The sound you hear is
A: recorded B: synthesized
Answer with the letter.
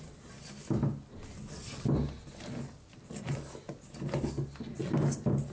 A